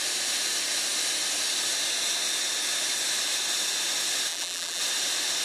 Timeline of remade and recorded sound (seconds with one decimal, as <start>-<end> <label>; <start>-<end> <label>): 0.0-4.3 recorded; 4.3-4.8 remade; 4.8-5.4 recorded